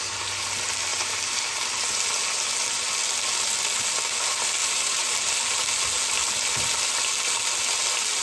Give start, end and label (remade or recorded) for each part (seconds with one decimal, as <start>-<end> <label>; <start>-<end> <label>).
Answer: 0.0-0.9 recorded; 0.9-1.4 remade; 1.4-4.6 recorded; 4.6-5.3 remade; 5.3-8.2 recorded